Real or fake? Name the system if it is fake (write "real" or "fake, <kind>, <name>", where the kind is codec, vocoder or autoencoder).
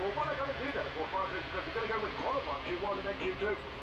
fake, vocoder, Vocos